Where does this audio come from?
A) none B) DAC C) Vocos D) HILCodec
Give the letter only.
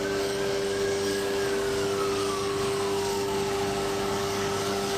B